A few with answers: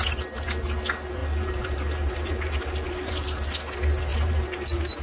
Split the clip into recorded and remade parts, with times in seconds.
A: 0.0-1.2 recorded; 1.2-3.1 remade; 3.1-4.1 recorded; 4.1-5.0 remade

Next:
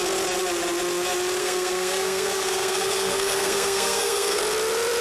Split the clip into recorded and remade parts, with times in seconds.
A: 0.0-1.4 recorded; 1.4-4.4 remade; 4.4-5.0 recorded

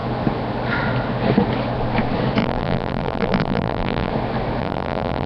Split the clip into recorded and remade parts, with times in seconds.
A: 0.0-2.4 recorded; 2.4-4.1 remade; 4.1-4.6 recorded; 4.6-5.3 remade

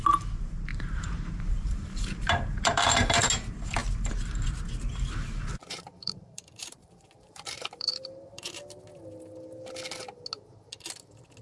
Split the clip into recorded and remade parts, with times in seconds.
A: 0.0-0.7 recorded; 0.7-3.3 remade; 3.3-5.6 recorded; 5.6-8.6 remade; 8.6-11.4 recorded

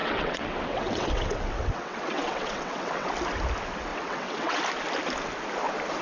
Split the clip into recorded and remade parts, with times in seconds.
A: 0.0-3.1 remade; 3.1-3.9 recorded; 3.9-4.6 remade; 4.6-6.0 recorded

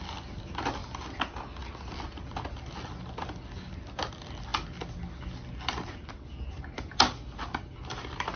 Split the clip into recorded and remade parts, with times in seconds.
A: 0.0-8.4 recorded

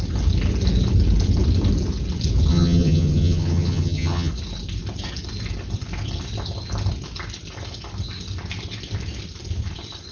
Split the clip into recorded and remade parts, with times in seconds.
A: 0.0-2.5 recorded; 2.5-4.3 remade; 4.3-10.1 recorded

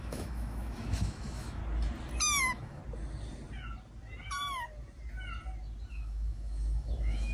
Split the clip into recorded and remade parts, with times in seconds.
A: 0.0-1.6 remade; 1.6-2.4 recorded; 2.4-2.8 remade; 2.8-5.9 recorded; 5.9-7.3 remade